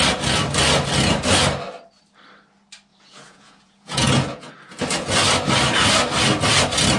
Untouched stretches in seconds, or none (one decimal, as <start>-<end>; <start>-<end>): 0.0-2.9; 4.5-7.0